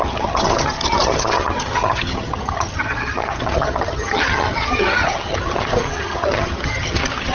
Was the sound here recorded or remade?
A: remade